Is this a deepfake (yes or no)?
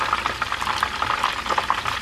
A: no